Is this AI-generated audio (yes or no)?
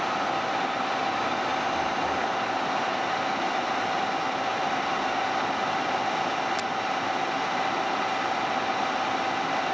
no